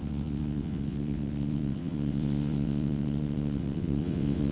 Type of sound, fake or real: fake